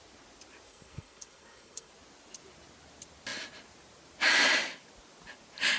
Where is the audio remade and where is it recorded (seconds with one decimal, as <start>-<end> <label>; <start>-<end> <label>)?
0.0-0.7 recorded; 0.7-1.9 remade; 1.9-5.8 recorded